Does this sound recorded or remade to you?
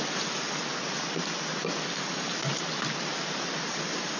recorded